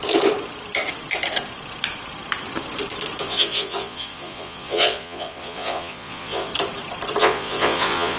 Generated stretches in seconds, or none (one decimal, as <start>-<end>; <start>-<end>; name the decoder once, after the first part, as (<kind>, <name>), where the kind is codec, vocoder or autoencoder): 3.2-6.5 (vocoder, Vocos); 7.2-8.2